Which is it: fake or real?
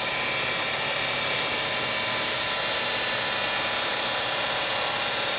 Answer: real